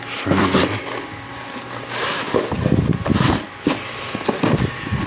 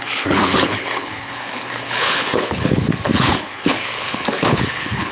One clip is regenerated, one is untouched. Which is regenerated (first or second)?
second